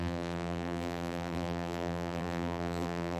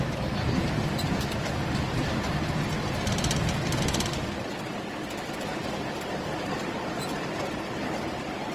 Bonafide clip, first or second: second